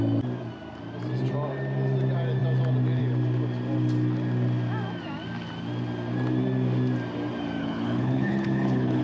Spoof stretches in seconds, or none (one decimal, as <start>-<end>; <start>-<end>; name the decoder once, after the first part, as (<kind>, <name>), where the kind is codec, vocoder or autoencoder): 7.6-9.0 (codec, HILCodec)